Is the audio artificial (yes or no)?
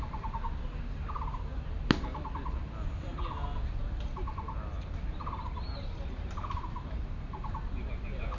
no